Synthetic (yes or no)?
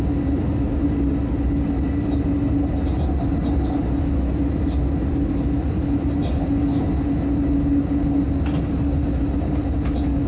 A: no